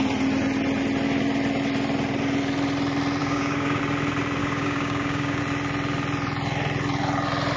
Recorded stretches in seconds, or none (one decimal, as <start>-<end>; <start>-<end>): 0.0-3.2; 3.8-4.4; 5.4-7.6